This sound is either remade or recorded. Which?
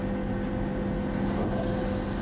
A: recorded